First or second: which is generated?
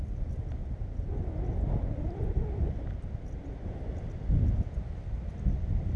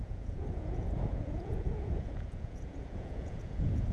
second